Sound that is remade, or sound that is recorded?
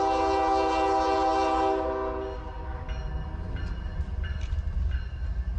recorded